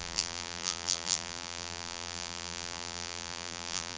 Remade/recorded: remade